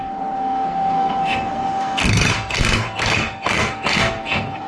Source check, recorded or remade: remade